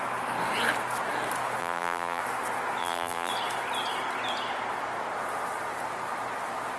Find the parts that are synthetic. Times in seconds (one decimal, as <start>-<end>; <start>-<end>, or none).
1.6-2.2; 2.8-3.3